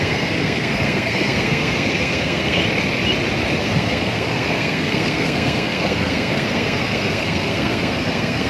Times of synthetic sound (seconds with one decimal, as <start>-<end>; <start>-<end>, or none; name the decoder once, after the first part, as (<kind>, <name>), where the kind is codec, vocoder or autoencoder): 0.0-2.6 (codec, SNAC); 3.6-8.5